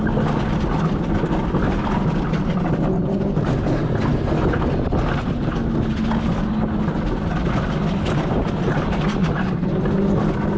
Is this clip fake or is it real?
real